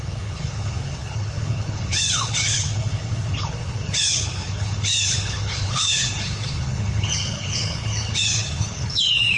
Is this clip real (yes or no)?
no